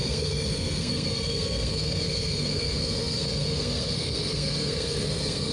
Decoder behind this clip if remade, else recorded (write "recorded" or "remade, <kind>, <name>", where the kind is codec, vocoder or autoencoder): remade, codec, SNAC